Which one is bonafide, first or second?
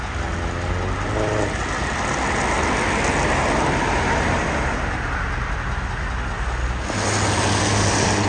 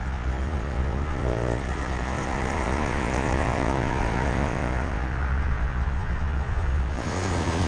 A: first